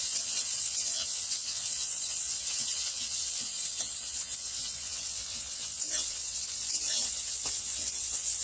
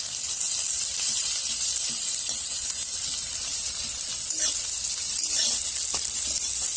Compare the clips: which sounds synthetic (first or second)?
first